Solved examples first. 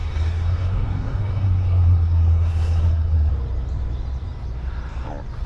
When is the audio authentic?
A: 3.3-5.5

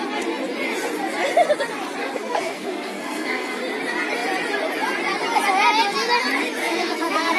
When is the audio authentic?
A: 0.0-2.0; 3.6-6.6

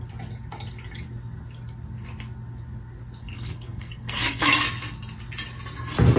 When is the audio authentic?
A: 0.0-3.2; 4.5-6.2

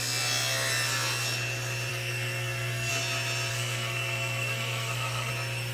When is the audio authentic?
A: 0.0-1.9; 2.9-3.5; 5.3-5.7

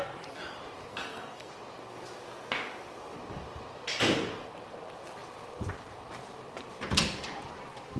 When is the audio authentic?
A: 0.0-0.9; 1.5-8.0